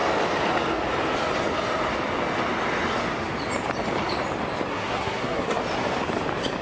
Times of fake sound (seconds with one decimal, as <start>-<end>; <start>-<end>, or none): 4.7-5.6